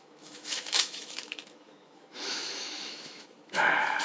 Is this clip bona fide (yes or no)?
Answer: no